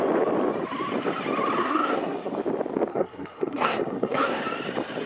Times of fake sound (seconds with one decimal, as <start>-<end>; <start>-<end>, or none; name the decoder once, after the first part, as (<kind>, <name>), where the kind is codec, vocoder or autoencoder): 1.6-2.3 (codec, SNAC); 2.9-4.4